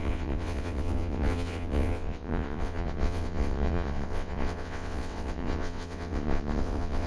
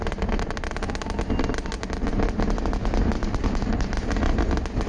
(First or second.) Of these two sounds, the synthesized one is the first